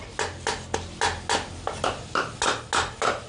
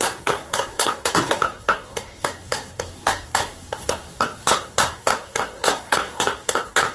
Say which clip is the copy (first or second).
second